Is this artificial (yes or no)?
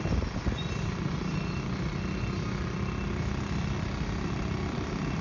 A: no